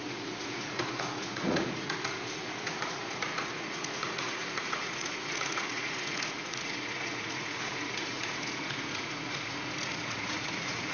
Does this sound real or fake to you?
fake